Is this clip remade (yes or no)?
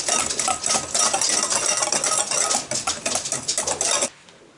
no